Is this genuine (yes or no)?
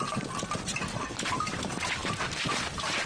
no